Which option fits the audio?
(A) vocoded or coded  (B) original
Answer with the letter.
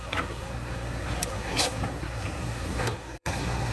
A